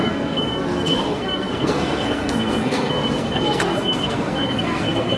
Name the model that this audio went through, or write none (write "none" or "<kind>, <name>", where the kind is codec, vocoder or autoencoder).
codec, SNAC